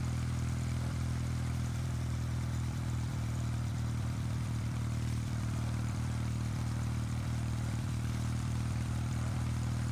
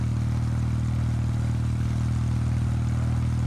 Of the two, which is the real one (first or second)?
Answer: second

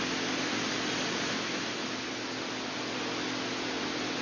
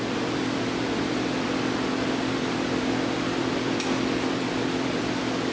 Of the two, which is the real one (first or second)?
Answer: first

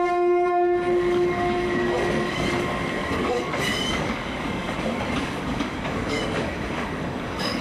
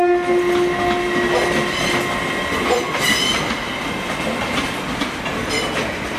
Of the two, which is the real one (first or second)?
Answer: second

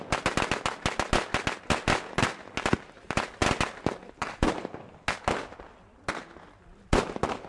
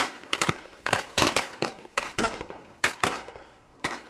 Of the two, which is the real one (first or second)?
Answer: first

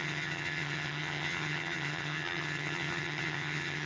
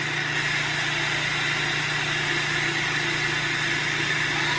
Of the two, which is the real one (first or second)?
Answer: second